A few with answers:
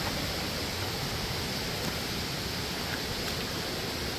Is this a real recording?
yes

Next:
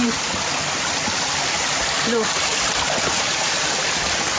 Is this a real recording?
yes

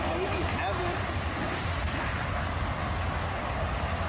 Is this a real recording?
yes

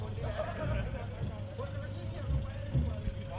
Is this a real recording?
yes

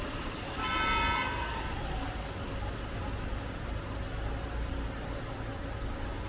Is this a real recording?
yes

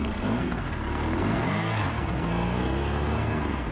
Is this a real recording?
no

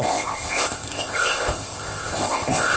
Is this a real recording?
no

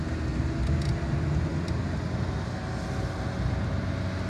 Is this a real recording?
yes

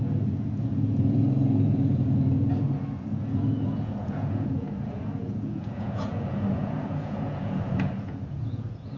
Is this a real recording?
no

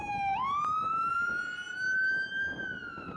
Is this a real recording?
yes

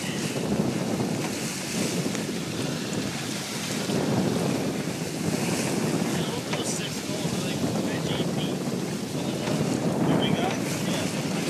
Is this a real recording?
yes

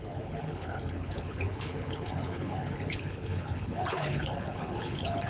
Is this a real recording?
no